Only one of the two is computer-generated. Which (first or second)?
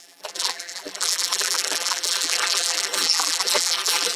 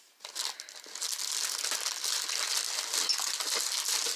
first